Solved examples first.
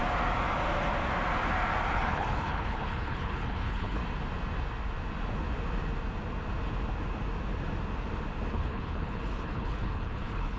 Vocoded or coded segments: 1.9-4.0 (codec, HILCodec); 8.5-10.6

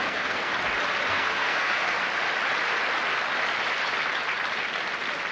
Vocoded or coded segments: 0.0-0.5 (codec, SNAC); 1.1-2.0

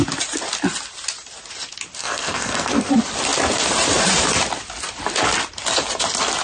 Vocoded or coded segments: 2.0-2.9 (codec, SNAC)

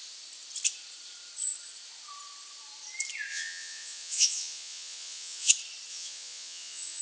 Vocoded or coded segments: 3.3-5.5 (vocoder, Vocos); 5.9-7.0